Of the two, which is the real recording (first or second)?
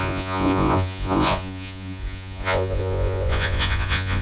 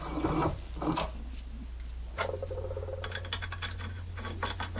second